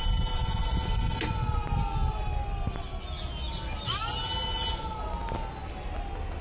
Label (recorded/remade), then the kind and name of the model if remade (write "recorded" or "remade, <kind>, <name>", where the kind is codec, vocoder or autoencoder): recorded